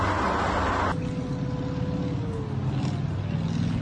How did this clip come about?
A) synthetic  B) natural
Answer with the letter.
B